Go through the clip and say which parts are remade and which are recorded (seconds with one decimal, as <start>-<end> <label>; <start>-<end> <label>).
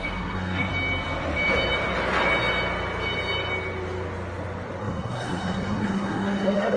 0.0-0.7 remade; 0.7-4.8 recorded; 4.8-6.8 remade